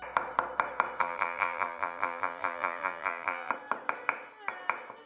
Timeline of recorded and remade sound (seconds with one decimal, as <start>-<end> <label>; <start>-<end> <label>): 0.0-1.0 recorded; 1.0-3.5 remade; 3.5-5.1 recorded